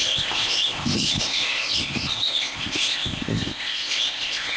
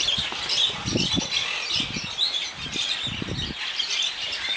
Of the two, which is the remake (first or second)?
first